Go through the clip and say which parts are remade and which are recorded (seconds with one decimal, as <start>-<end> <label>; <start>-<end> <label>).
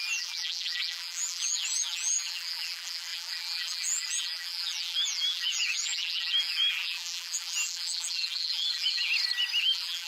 0.0-9.1 remade; 9.1-9.6 recorded; 9.6-10.1 remade